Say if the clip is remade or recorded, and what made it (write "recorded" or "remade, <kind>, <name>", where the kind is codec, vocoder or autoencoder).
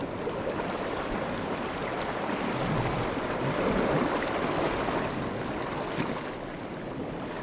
recorded